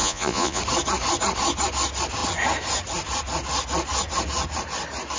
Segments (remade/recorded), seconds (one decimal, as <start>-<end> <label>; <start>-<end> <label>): 0.0-0.6 remade; 0.6-5.2 recorded